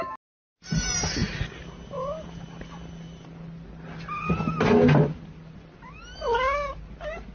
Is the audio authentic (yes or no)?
yes